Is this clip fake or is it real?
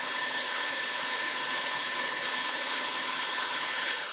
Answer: fake